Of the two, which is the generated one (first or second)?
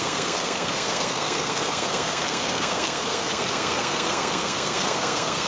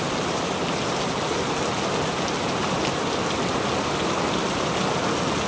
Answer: first